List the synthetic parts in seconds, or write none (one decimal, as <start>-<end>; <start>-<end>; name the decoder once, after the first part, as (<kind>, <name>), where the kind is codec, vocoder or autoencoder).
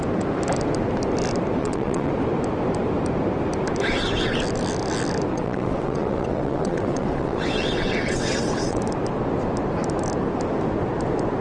1.6-2.1 (vocoder, WaveNeXt); 5.3-8.8